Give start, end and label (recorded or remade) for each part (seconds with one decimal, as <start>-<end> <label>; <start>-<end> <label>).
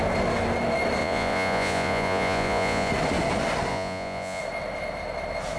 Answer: 0.0-1.0 recorded; 1.0-2.9 remade; 2.9-3.7 recorded; 3.7-4.4 remade; 4.4-5.6 recorded